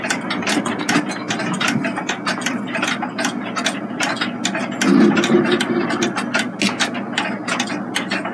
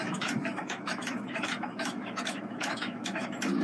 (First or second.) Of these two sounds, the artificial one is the second